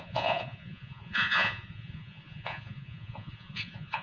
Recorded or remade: remade